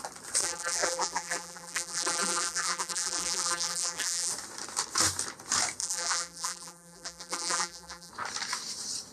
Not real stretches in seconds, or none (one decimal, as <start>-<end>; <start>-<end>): 0.4-4.3; 5.8-8.1

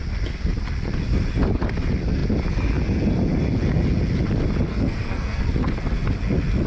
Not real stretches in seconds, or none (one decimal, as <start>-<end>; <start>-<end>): 4.7-5.4

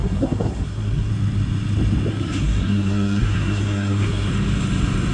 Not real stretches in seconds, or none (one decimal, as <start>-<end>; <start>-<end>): 0.0-1.1; 2.1-4.3

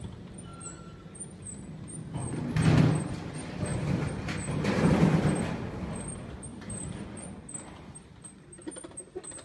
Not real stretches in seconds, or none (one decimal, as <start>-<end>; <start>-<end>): 3.7-5.5; 6.5-8.2